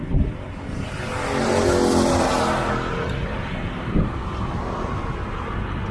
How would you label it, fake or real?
real